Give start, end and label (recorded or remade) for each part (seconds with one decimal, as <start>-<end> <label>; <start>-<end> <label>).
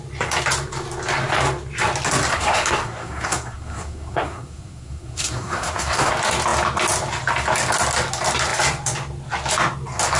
0.0-2.3 recorded; 2.3-6.1 remade; 6.1-10.2 recorded